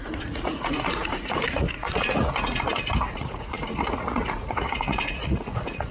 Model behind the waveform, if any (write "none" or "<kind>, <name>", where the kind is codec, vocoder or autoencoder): vocoder, Vocos